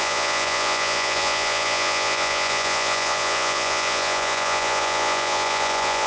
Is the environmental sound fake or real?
fake